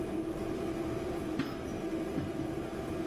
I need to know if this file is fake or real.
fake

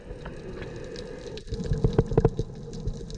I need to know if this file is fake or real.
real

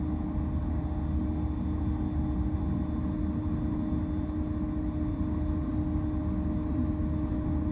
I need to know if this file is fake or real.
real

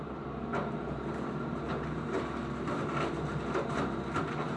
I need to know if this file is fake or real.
fake